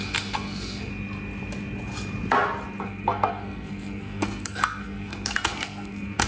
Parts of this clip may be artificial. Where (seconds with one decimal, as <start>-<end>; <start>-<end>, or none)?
0.0-0.9; 2.8-6.3

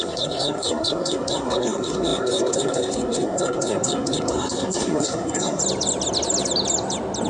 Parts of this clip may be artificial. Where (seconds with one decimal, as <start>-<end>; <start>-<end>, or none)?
0.0-5.6

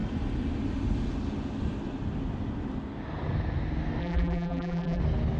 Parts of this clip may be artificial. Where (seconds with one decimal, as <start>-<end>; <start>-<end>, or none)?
4.0-5.0

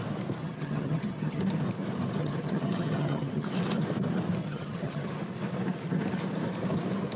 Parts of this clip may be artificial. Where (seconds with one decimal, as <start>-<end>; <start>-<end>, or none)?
0.4-1.4; 2.2-3.5; 4.4-5.1

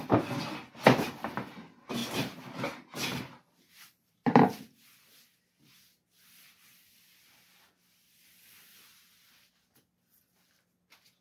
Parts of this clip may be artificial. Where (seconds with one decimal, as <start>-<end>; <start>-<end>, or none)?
2.0-4.6

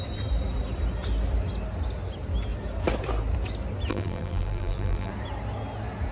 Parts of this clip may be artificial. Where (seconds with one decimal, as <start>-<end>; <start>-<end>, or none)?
3.9-5.1

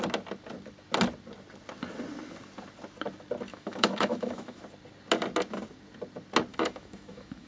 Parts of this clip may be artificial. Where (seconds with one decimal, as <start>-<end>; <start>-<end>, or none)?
3.5-4.6; 6.5-7.5